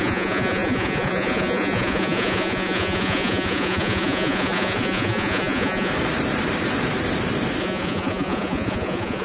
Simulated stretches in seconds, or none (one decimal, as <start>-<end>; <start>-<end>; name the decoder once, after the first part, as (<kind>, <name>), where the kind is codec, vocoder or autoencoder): 0.0-5.9 (vocoder, Vocos); 7.6-9.2

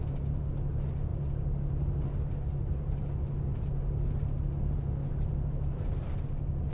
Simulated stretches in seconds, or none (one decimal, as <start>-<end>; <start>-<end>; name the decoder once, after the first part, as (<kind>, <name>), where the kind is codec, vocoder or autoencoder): none

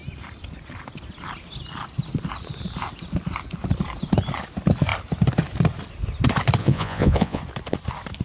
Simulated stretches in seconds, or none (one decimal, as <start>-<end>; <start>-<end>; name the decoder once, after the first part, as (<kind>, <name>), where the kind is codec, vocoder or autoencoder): 6.6-7.4 (vocoder, Vocos)

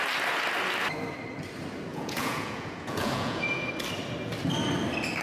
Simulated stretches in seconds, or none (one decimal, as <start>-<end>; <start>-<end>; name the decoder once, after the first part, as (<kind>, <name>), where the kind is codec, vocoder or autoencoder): 1.9-3.7 (vocoder, Vocos)

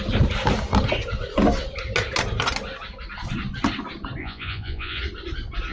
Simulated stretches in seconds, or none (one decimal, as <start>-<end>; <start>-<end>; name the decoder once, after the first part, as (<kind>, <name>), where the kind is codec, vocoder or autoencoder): 4.2-5.0 (vocoder, Vocos)